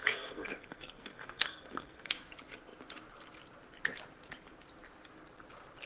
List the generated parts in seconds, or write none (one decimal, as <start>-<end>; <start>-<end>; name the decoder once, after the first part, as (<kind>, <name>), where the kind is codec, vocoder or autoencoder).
0.0-2.1 (codec, SNAC)